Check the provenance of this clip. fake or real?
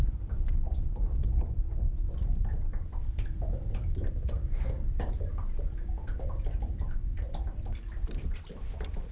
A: fake